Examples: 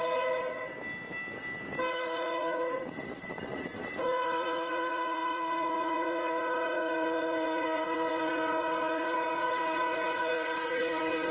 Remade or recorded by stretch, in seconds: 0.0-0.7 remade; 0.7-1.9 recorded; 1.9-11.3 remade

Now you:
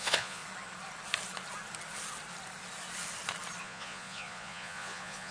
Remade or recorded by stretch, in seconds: 0.0-0.4 remade; 0.4-3.6 recorded; 3.6-5.3 remade

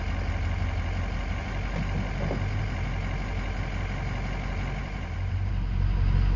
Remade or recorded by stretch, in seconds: 0.0-4.8 recorded; 4.8-5.5 remade; 5.5-6.4 recorded

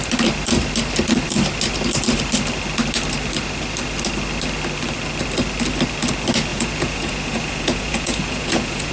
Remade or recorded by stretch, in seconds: 0.0-6.5 recorded; 6.5-8.9 remade

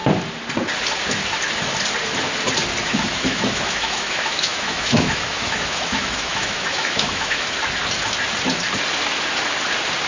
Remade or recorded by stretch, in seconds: 0.0-2.8 recorded; 2.8-7.5 remade; 7.5-10.1 recorded

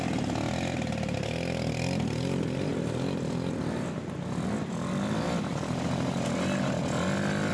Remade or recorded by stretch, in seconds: 0.0-7.5 recorded